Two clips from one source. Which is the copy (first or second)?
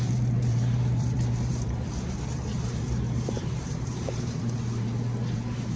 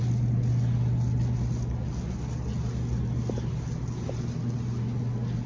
first